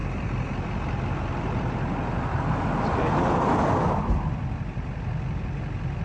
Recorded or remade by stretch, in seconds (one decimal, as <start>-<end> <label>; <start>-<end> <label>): 0.0-3.0 remade; 3.0-6.0 recorded

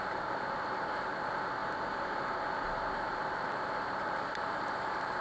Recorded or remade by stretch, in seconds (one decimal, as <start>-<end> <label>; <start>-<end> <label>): 0.0-1.6 remade; 1.6-2.7 recorded; 2.7-5.2 remade

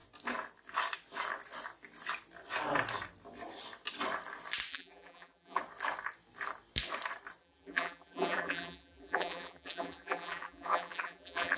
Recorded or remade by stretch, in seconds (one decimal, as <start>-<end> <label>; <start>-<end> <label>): 0.0-4.7 recorded; 4.7-5.6 remade; 5.6-7.4 recorded; 7.4-11.6 remade